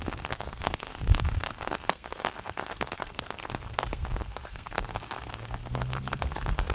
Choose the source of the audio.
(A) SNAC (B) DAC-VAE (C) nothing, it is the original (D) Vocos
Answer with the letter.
A